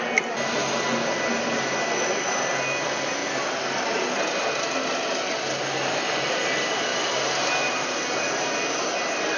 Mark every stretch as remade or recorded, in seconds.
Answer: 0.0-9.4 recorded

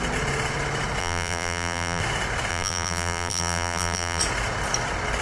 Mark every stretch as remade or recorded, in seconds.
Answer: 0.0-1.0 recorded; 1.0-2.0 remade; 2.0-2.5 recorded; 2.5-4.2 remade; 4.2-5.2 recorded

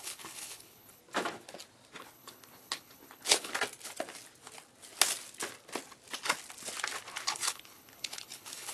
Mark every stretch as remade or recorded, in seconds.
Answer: 0.0-1.0 remade; 1.0-2.0 recorded; 2.0-3.5 remade; 3.5-7.2 recorded; 7.2-8.7 remade

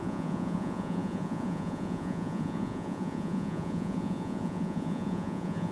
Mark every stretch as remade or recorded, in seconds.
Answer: 0.0-5.7 remade